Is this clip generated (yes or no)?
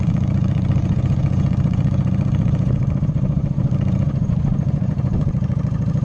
yes